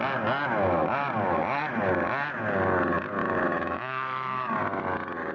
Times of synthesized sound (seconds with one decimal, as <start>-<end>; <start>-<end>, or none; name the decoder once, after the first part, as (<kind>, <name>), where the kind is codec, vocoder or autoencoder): 3.2-4.5 (autoencoder, DAC-VAE)